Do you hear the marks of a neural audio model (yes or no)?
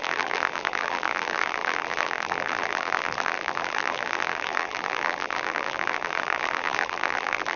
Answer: yes